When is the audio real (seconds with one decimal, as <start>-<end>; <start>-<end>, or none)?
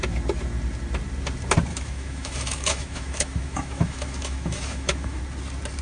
0.0-1.7; 5.2-5.8